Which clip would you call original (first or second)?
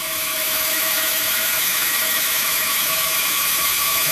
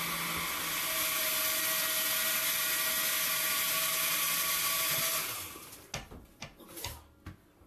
second